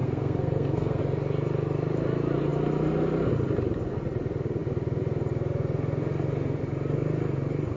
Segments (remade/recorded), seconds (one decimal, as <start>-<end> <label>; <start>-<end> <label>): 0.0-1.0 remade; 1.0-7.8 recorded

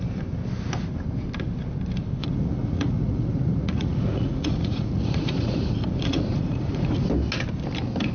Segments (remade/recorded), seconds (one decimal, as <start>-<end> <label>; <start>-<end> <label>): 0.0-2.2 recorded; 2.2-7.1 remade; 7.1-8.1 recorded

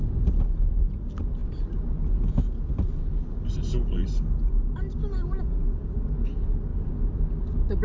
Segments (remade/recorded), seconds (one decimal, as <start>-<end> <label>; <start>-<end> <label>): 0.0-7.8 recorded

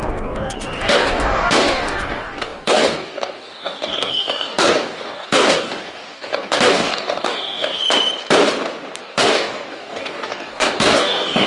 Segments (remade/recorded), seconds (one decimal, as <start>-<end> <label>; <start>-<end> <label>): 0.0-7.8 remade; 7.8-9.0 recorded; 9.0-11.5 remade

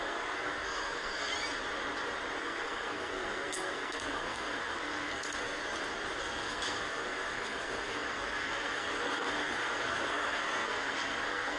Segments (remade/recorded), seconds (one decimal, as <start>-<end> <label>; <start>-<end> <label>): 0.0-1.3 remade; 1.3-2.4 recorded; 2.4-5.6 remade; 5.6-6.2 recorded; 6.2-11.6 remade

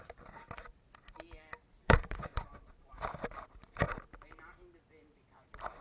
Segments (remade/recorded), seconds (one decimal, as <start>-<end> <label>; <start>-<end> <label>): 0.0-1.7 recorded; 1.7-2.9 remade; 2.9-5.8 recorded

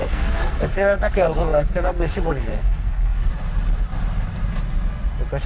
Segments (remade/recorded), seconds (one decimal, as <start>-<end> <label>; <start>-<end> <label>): 0.0-3.3 remade; 3.3-5.5 recorded

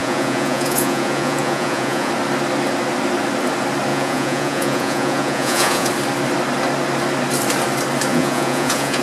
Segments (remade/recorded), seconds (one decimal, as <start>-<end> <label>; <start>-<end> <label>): 0.0-2.1 remade; 2.1-3.9 recorded; 3.9-5.9 remade; 5.9-8.1 recorded; 8.1-9.0 remade